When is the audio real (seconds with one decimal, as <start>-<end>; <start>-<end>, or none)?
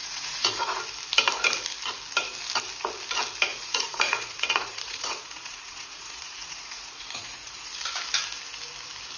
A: 0.8-3.5; 7.7-9.2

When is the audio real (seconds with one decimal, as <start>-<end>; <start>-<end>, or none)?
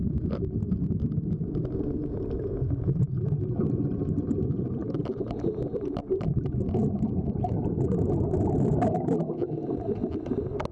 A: 0.0-4.8; 6.3-10.7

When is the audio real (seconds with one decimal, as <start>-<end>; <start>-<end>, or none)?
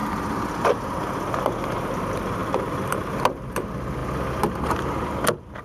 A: 0.0-5.6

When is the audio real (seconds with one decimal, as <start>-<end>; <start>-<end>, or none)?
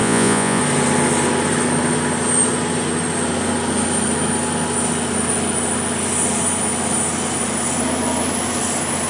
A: 0.6-9.1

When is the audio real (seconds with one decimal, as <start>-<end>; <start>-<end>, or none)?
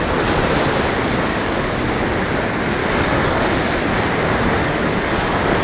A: 0.0-1.3; 1.8-2.8; 3.5-4.6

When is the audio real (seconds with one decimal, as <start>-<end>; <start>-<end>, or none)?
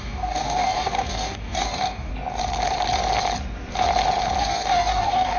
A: 2.1-4.4